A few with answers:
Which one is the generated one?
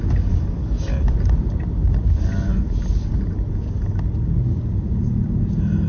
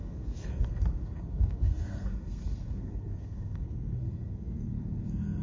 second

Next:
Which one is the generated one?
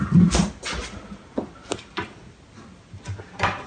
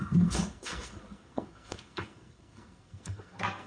second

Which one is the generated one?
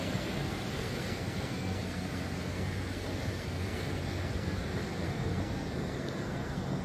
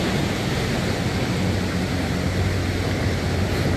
first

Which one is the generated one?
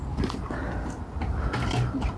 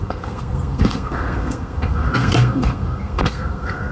second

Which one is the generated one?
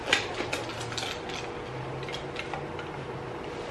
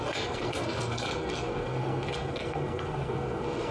second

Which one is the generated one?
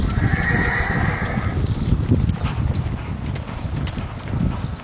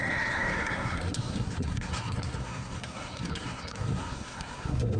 second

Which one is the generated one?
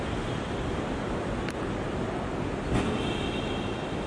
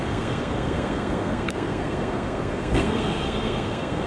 second